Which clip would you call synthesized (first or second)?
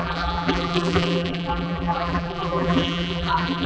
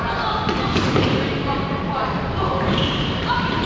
first